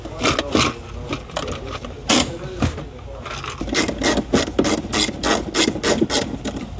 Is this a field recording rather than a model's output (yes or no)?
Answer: yes